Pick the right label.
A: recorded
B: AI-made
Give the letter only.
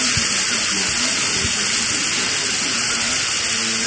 A